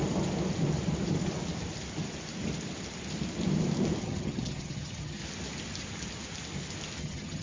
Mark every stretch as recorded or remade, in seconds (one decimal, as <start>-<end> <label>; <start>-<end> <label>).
0.0-4.0 recorded; 4.0-5.2 remade; 5.2-7.0 recorded; 7.0-7.4 remade